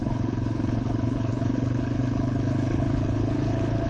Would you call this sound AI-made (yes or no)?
yes